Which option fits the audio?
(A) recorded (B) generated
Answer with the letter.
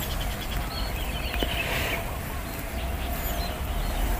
A